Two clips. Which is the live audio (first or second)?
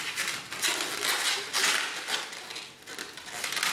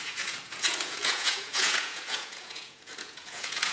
first